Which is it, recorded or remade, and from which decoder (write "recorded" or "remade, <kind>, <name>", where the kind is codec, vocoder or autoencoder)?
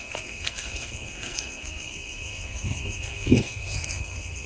remade, codec, SNAC